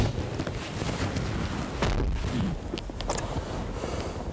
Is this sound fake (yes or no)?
no